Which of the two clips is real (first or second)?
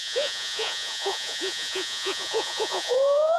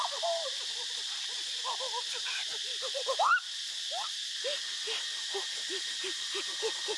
second